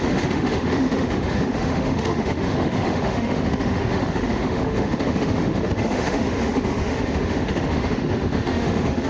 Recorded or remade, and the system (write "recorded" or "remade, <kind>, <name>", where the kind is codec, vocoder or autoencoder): remade, autoencoder, DAC-VAE